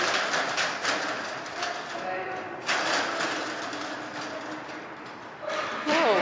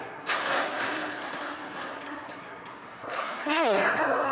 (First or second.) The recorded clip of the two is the first